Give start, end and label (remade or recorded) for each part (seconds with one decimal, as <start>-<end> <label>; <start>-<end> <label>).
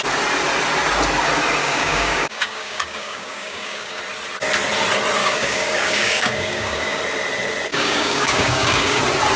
0.0-1.6 recorded; 1.6-4.0 remade; 4.0-5.2 recorded; 5.2-7.0 remade; 7.0-7.7 recorded; 7.7-9.0 remade; 9.0-9.4 recorded